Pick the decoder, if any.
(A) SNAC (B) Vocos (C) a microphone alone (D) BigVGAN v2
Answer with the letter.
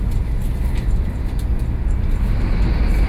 C